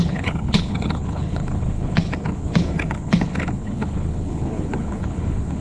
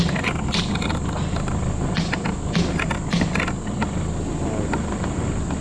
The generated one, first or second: first